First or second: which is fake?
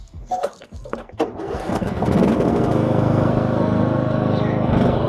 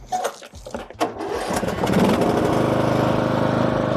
first